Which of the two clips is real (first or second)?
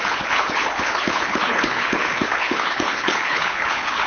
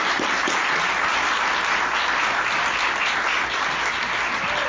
second